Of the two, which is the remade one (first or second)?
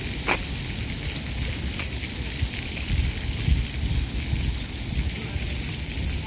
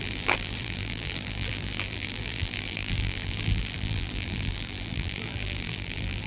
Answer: second